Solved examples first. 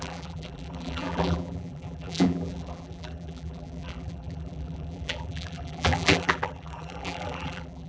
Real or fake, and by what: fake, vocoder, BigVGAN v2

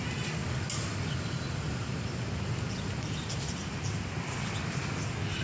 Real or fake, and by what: real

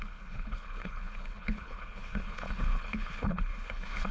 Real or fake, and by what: fake, codec, HILCodec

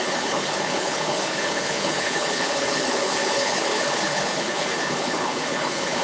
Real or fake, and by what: fake, codec, HILCodec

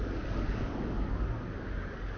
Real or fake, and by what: fake, codec, DAC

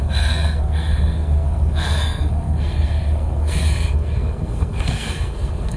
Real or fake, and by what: fake, codec, SNAC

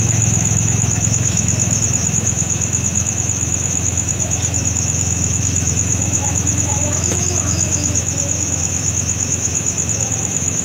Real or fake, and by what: fake, autoencoder, DAC-VAE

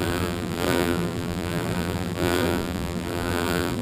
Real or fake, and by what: fake, vocoder, BigVGAN v2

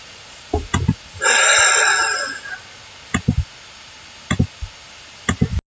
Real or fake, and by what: real